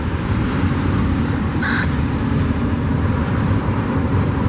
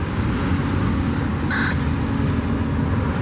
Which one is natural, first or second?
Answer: second